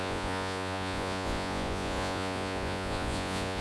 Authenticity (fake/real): fake